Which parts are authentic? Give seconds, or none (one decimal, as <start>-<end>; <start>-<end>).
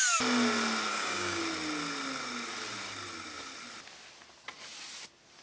0.0-0.9; 1.4-5.4